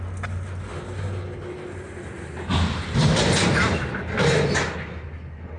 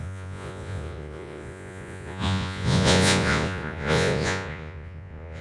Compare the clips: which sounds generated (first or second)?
second